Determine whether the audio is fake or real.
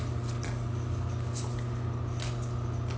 real